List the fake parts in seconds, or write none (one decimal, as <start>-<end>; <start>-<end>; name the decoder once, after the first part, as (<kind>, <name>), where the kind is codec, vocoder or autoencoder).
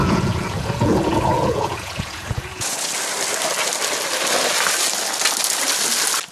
0.0-2.9 (vocoder, Vocos)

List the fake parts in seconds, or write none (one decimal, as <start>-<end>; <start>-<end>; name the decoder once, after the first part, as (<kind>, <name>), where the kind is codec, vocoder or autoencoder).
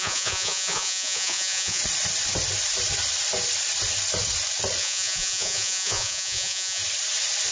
0.0-1.8 (vocoder, Vocos); 4.8-6.8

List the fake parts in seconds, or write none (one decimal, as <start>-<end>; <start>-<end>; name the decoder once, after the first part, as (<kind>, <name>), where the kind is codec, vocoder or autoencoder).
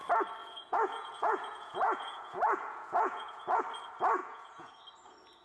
0.4-3.6 (vocoder, Vocos); 4.2-4.8